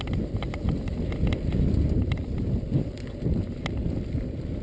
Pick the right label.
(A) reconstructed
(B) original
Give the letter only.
B